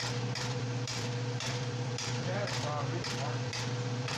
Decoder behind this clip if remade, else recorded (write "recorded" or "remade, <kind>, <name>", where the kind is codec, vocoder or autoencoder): remade, vocoder, BigVGAN v2